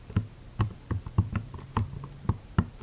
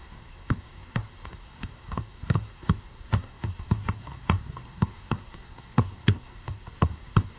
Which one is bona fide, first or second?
first